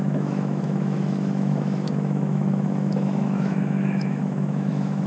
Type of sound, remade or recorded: remade